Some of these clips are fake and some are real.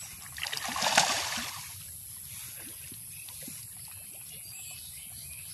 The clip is real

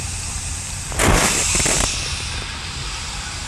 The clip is fake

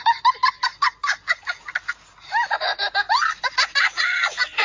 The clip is real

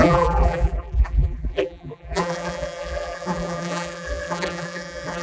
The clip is fake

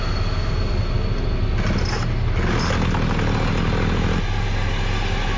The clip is real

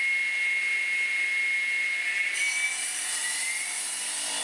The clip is real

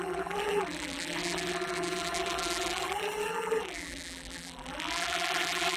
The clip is fake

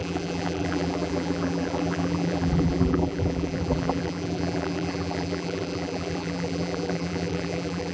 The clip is fake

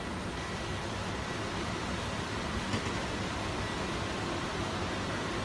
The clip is real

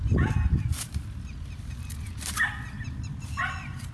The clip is real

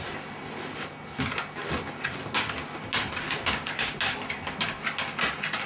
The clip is real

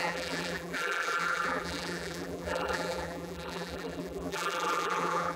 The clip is fake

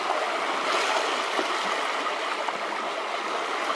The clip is real